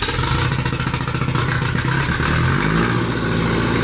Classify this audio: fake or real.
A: real